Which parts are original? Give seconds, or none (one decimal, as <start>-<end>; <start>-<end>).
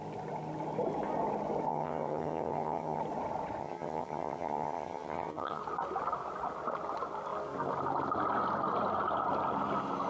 0.0-1.7; 3.0-3.6; 5.6-10.1